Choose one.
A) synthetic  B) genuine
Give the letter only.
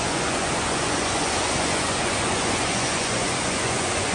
A